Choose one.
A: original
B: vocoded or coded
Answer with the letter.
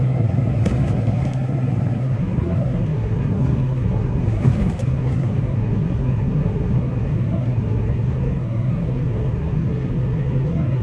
B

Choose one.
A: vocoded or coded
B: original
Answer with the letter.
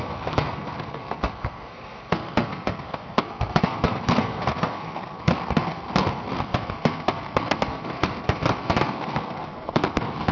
A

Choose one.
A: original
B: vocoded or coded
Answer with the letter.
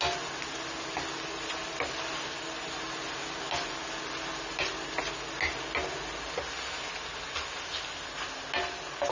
A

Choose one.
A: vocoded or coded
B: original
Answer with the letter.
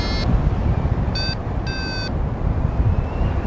B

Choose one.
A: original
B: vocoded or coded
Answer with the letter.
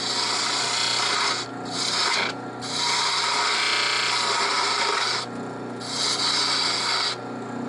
A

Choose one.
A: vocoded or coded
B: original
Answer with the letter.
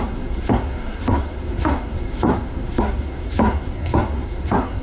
A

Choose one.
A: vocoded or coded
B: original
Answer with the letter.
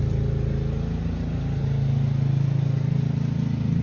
B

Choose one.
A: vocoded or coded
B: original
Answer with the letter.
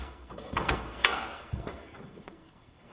A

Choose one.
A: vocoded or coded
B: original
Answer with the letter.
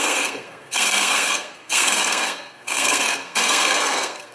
A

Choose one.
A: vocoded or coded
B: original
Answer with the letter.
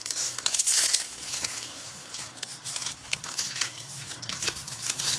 A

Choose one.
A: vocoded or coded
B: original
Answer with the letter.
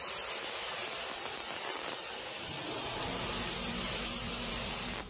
B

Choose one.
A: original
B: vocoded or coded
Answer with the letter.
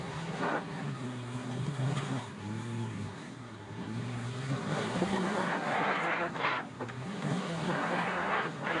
B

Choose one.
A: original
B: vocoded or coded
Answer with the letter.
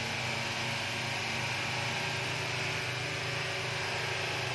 A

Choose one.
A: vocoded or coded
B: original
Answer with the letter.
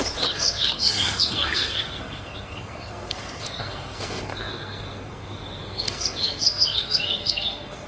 A